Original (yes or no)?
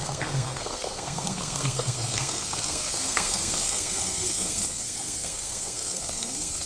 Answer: no